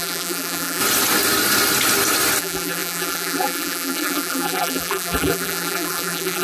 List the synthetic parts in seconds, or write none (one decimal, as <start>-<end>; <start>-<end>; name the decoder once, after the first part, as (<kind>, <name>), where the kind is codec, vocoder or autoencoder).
0.0-0.8 (vocoder, BigVGAN v2); 2.4-6.4